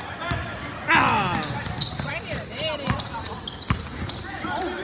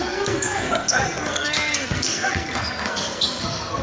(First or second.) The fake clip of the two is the second